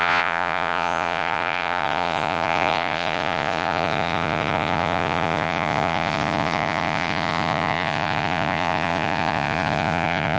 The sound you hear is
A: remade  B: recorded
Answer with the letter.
A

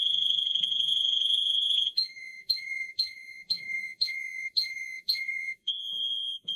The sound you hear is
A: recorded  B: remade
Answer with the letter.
B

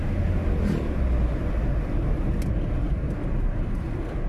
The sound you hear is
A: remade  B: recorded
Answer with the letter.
B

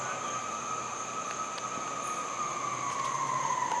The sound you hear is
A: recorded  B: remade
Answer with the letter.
A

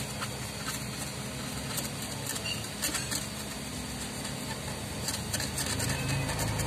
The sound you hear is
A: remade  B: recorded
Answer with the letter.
B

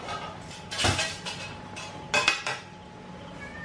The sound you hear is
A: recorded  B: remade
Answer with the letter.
A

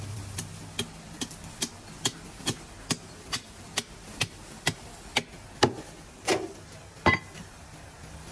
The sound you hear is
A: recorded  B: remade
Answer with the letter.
A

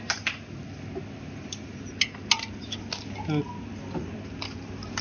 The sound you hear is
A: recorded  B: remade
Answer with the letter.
A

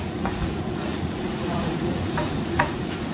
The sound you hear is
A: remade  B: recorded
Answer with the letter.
A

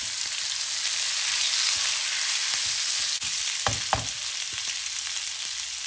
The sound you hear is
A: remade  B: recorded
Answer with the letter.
B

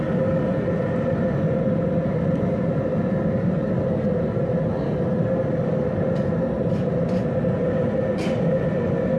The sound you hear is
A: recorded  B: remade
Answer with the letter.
A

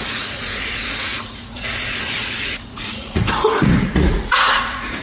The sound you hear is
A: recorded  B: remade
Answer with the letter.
B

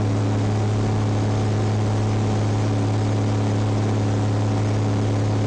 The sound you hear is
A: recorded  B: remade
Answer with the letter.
A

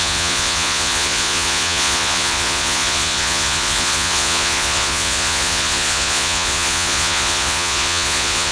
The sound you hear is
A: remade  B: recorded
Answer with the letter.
A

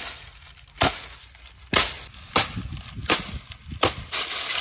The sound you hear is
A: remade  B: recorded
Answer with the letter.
B